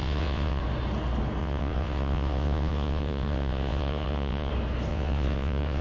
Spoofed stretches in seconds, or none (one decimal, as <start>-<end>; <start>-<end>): 0.0-0.6; 1.4-4.5; 4.9-5.8

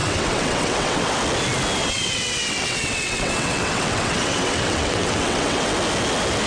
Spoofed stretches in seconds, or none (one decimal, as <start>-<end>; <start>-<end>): 0.0-1.1; 1.8-5.7

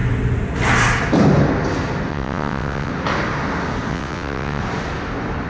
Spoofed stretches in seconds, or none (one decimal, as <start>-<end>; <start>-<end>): 2.1-2.9; 3.9-4.6